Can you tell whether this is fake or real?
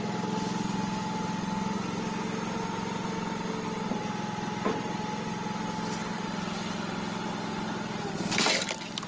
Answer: real